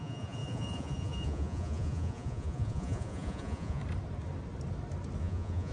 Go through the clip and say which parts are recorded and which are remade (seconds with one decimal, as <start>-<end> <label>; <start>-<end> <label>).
0.0-3.8 remade; 3.8-5.2 recorded; 5.2-5.7 remade